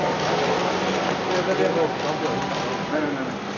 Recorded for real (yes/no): yes